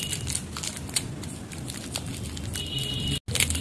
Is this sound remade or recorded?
recorded